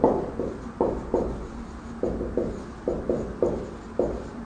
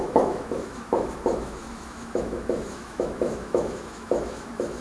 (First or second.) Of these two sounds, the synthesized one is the second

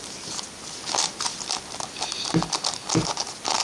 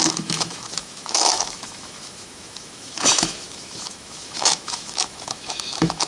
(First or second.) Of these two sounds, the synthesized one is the second